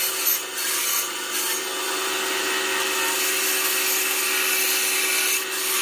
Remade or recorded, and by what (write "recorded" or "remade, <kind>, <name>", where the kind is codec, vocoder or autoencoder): recorded